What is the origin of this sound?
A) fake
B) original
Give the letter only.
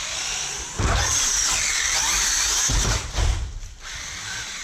B